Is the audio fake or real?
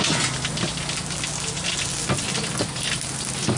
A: real